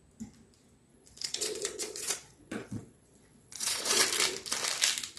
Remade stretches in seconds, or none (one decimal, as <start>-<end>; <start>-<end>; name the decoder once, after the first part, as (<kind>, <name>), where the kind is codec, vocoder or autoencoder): 0.9-4.0 (vocoder, Vocos)